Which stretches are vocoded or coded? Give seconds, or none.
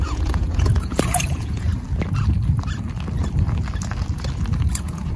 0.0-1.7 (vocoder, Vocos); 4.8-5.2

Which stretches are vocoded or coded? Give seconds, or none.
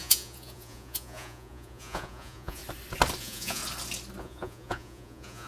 0.0-2.6 (vocoder, Vocos); 3.2-3.6; 4.2-5.5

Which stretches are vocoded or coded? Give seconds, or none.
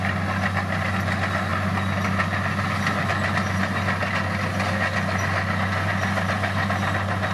none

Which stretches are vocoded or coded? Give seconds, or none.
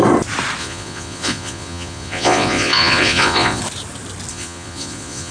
0.6-3.6 (vocoder, Vocos); 4.3-5.3